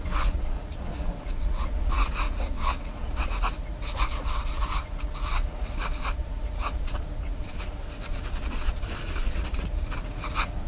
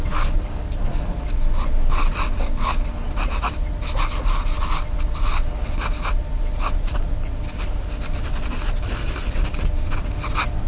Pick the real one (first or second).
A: second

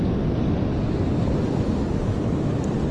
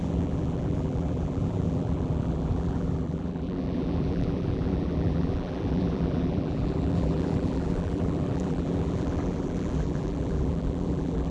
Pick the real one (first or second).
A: first